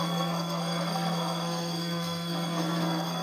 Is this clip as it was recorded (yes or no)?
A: no